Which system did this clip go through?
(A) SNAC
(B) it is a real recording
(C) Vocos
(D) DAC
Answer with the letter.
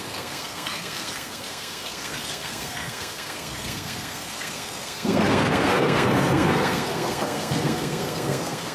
A